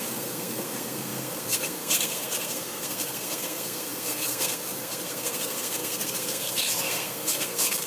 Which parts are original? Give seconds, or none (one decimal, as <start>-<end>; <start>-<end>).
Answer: none